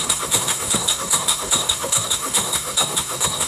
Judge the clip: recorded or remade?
remade